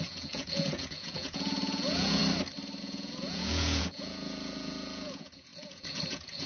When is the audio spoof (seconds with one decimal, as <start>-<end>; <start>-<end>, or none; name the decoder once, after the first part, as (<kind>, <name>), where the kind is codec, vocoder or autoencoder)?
0.0-2.2 (vocoder, Vocos); 2.8-6.5